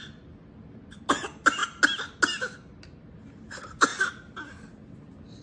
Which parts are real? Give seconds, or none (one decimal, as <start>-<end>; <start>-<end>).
0.0-5.4